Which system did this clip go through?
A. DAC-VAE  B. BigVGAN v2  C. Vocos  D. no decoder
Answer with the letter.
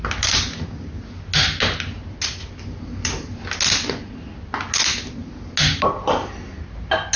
D